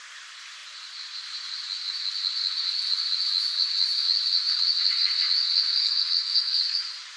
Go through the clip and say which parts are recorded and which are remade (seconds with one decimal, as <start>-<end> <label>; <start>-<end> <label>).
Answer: 0.0-5.8 recorded; 5.8-6.6 remade; 6.6-7.2 recorded